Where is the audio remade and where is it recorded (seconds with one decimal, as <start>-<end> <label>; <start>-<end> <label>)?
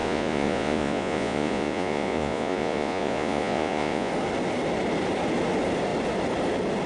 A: 0.0-4.1 remade; 4.1-6.9 recorded